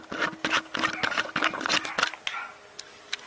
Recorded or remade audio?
recorded